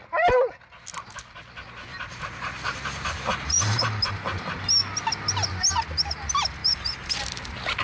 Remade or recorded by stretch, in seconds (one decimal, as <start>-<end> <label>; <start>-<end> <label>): 0.0-1.9 recorded; 1.9-4.0 remade; 4.0-6.6 recorded; 6.6-7.2 remade; 7.2-7.8 recorded